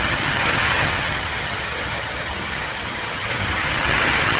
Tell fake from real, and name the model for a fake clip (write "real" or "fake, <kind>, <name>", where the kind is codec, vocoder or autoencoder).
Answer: fake, vocoder, HiFi-GAN